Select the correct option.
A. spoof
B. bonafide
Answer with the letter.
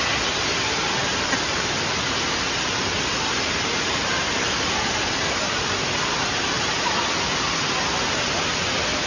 B